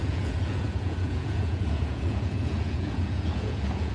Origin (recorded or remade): remade